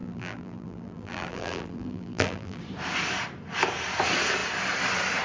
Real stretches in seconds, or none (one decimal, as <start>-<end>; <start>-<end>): 2.6-5.2